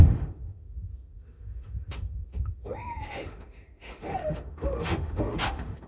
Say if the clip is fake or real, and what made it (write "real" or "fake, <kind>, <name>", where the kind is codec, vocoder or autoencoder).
fake, autoencoder, DAC-VAE